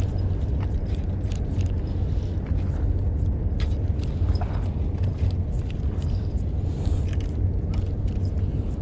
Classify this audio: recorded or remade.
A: recorded